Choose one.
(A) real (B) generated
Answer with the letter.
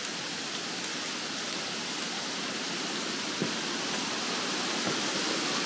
A